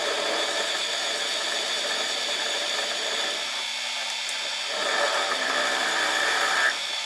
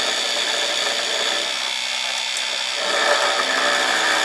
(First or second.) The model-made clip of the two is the first